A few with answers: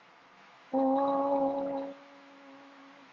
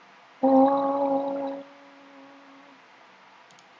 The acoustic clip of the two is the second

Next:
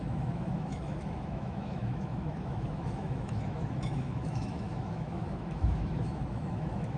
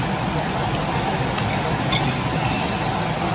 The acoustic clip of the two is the second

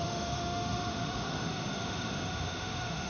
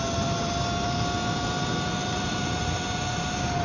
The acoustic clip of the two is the second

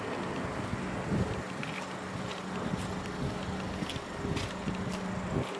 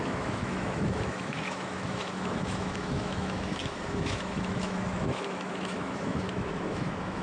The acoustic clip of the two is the first